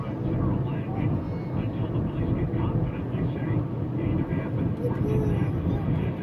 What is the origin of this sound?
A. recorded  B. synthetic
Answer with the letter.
A